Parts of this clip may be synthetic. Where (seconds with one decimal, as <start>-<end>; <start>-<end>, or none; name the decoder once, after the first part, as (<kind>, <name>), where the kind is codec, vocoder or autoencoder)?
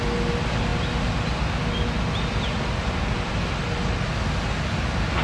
none